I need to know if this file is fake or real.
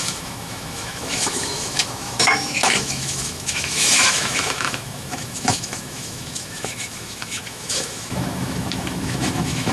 fake